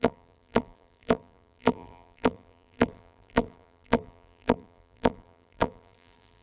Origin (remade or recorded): remade